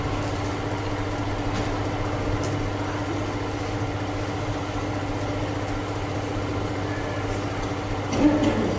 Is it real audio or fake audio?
real